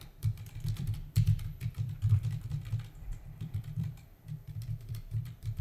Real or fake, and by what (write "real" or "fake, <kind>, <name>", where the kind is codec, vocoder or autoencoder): fake, vocoder, BigVGAN v2